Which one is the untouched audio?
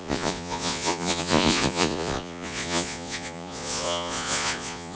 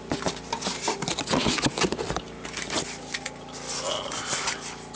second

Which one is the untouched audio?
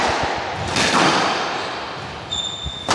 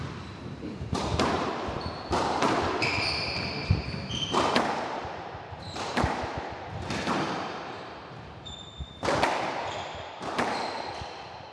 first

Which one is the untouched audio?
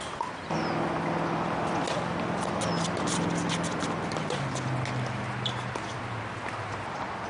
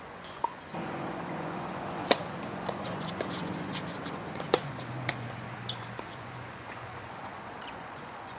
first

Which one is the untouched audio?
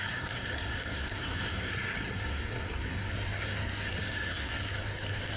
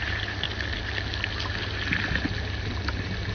second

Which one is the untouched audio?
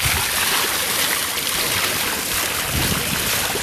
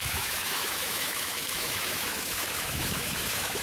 first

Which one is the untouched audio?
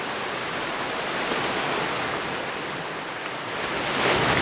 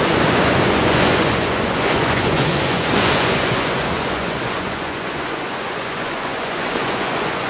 first